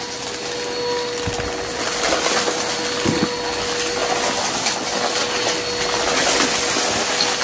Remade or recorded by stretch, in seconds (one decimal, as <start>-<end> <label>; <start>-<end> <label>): 0.0-7.4 recorded